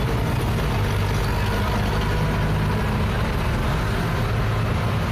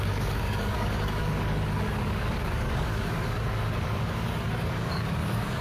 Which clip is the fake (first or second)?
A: second